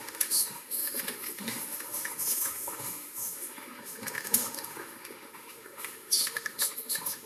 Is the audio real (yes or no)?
no